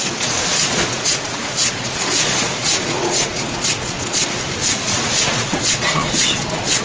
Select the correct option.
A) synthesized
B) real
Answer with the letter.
A